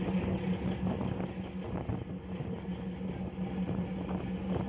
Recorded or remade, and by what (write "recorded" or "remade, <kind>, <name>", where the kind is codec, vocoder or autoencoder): recorded